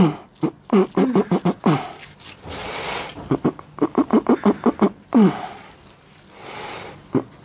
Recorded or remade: recorded